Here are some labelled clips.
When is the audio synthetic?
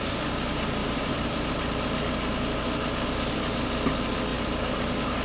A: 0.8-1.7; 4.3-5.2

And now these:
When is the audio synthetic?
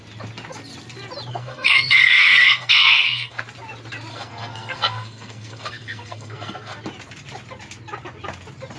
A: 1.3-3.4; 4.1-6.8